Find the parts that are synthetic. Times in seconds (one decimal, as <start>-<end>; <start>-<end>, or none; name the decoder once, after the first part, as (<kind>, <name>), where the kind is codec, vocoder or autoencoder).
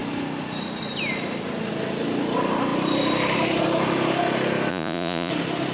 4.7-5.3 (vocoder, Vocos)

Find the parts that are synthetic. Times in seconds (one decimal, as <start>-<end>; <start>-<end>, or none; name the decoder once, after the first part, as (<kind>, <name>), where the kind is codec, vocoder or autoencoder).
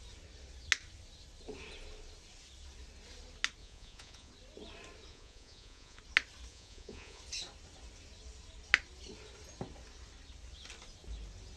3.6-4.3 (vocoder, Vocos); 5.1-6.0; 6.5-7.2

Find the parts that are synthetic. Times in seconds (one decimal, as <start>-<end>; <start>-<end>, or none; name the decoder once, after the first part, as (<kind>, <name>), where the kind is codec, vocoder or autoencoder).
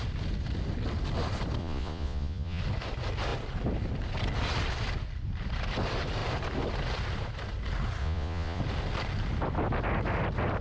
1.6-2.6 (vocoder, Vocos); 8.0-8.6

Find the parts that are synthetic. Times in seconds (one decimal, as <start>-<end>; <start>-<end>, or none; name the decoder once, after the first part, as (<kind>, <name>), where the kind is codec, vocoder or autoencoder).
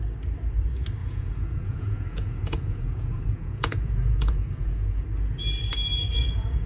1.0-5.0 (vocoder, Vocos); 6.1-6.7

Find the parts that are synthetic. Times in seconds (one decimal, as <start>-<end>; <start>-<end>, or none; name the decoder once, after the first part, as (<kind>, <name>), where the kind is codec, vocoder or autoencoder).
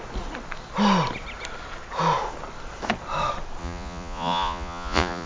3.6-5.3 (vocoder, Vocos)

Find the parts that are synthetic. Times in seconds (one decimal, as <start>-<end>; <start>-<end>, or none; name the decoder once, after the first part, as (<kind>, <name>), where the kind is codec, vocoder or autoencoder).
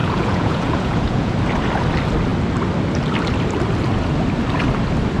0.0-1.3 (vocoder, Vocos)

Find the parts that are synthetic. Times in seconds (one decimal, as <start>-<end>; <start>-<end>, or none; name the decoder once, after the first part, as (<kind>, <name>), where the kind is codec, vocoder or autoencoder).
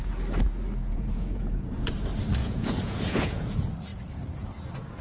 0.8-1.9 (vocoder, Vocos); 2.4-3.5